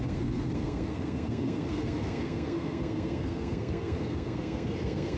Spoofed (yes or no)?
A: yes